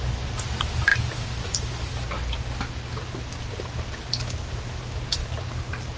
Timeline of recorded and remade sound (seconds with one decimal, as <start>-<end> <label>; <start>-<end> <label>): 0.0-6.0 recorded